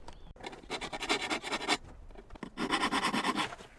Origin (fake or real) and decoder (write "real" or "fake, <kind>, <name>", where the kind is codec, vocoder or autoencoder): real